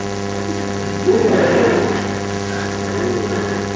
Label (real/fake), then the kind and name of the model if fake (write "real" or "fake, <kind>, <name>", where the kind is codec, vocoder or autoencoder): real